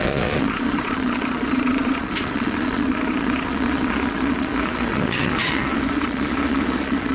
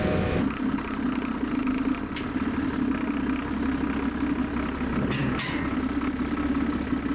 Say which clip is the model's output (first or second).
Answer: first